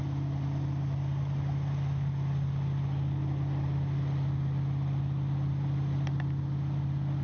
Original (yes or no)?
yes